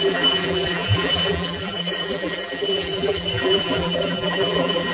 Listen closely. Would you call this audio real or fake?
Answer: fake